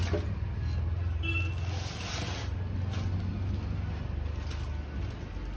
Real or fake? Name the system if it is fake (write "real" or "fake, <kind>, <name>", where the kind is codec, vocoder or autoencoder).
real